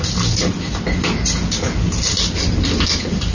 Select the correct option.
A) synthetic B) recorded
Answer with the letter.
B